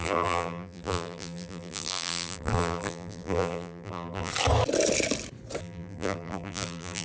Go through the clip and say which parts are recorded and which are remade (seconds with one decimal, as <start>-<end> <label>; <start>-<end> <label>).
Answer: 0.0-4.3 remade; 4.3-5.6 recorded; 5.6-7.0 remade